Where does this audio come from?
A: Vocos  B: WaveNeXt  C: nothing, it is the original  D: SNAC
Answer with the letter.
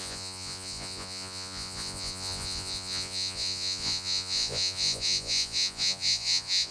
A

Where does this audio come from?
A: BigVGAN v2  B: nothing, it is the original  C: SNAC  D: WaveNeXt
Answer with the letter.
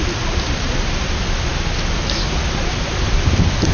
B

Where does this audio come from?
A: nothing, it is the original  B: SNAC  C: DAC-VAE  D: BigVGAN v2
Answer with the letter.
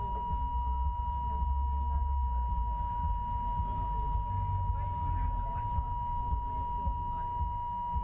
A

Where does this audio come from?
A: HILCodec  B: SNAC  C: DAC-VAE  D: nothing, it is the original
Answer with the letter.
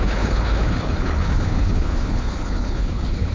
A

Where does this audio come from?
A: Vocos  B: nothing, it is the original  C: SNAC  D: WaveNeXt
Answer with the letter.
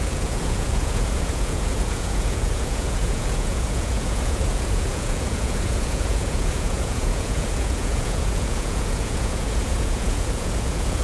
A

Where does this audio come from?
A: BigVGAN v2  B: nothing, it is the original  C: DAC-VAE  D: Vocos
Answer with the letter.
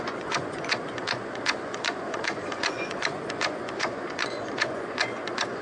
D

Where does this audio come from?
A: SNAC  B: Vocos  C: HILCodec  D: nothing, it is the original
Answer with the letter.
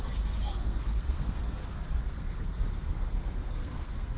A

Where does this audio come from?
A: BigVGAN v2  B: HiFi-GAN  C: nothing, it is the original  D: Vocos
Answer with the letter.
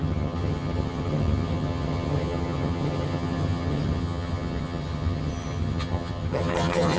B